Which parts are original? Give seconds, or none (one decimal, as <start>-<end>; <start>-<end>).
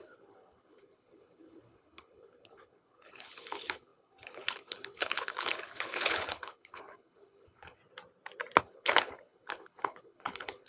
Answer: 7.8-8.6